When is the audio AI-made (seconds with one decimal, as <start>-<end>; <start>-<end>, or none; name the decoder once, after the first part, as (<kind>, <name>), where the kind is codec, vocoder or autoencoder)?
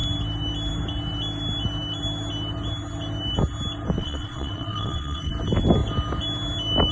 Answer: 4.0-5.3 (vocoder, WaveNeXt)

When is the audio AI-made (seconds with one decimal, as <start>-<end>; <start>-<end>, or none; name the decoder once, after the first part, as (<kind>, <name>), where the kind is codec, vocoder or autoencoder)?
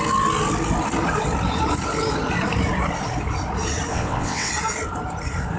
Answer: 3.9-4.5 (vocoder, WaveNeXt)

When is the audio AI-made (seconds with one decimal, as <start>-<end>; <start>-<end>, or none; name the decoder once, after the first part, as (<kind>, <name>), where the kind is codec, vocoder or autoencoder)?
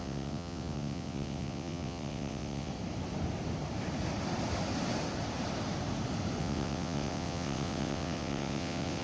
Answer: 0.0-2.7 (vocoder, WaveNeXt); 6.4-9.0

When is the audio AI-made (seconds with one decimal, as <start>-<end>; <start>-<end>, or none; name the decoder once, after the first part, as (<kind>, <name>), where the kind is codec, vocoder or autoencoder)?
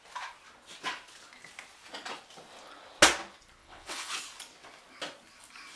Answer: 3.6-4.1 (vocoder, WaveNeXt)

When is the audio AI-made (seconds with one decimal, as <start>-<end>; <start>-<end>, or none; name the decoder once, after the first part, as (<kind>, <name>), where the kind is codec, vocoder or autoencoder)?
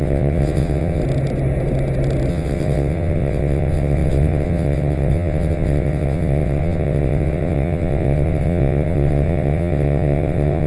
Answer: 0.0-1.0 (vocoder, WaveNeXt); 2.3-10.7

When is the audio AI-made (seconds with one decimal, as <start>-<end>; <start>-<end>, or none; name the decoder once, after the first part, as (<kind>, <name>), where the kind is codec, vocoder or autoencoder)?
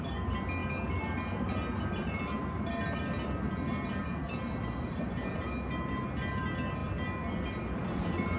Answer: none